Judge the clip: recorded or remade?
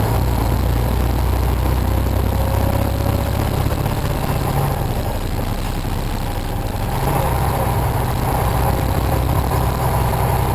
recorded